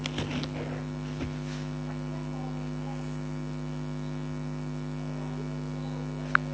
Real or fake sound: real